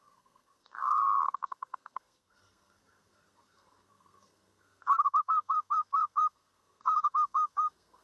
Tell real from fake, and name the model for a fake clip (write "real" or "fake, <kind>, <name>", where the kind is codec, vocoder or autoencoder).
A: fake, codec, SNAC